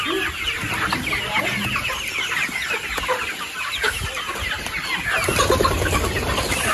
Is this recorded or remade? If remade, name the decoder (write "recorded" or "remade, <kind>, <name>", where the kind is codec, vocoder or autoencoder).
recorded